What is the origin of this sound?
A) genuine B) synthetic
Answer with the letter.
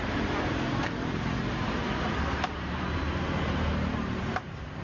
B